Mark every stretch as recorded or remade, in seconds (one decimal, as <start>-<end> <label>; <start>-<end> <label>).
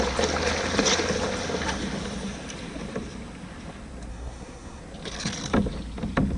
0.0-4.1 recorded; 4.1-4.8 remade; 4.8-6.4 recorded